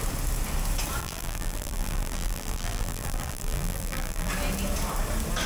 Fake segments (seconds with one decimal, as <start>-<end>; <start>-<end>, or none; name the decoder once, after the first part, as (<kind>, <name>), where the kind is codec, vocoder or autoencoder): 1.0-4.3 (vocoder, BigVGAN v2)